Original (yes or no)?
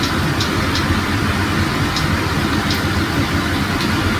yes